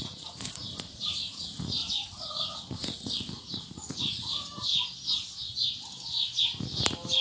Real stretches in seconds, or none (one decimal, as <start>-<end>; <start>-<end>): 4.5-7.2

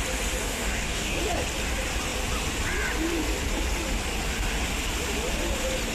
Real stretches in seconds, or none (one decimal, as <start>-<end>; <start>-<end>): 0.0-0.4; 1.2-5.9

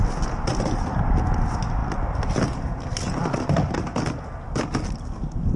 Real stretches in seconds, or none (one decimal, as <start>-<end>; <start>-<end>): 0.0-0.5; 1.1-5.6

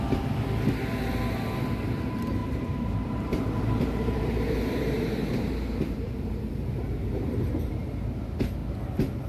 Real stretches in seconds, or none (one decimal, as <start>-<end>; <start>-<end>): 0.0-2.4; 7.7-9.3

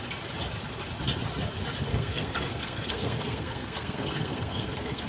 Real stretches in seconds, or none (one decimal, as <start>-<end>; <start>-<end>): 0.0-1.9